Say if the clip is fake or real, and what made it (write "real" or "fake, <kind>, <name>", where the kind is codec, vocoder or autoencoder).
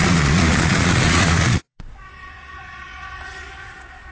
fake, vocoder, Vocos